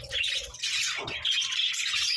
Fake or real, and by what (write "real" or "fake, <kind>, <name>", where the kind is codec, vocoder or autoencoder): real